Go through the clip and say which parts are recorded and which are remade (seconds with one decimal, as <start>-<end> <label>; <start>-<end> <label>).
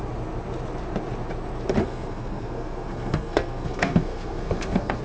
0.0-1.8 recorded; 1.8-5.0 remade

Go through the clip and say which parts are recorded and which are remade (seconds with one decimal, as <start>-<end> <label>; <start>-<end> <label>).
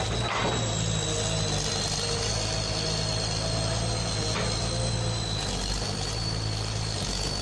0.0-7.4 recorded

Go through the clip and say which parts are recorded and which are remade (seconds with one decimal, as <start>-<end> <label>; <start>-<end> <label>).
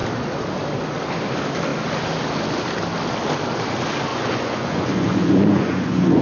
0.0-4.1 recorded; 4.1-6.2 remade